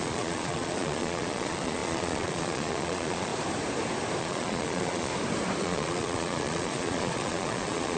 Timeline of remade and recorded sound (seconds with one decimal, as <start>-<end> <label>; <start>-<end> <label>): 0.0-3.3 remade; 3.3-4.2 recorded; 4.2-5.1 remade; 5.1-5.6 recorded; 5.6-8.0 remade